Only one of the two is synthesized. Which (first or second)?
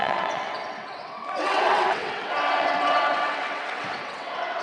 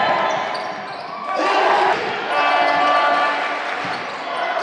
first